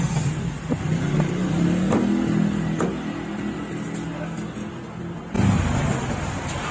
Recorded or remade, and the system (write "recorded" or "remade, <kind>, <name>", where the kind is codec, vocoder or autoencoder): recorded